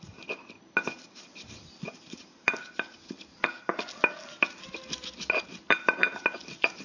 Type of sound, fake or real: real